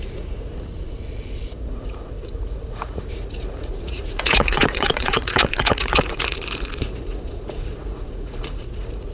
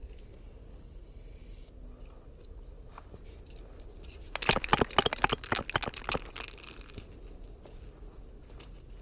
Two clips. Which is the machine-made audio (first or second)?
first